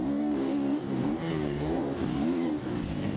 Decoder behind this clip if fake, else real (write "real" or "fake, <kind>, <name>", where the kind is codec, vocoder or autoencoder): fake, codec, DAC